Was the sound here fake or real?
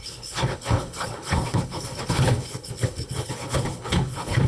fake